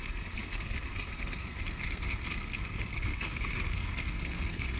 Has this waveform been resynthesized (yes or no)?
yes